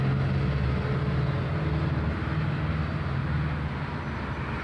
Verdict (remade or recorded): recorded